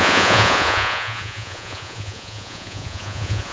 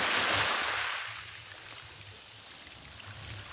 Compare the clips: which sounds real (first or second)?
second